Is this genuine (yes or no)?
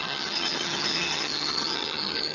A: no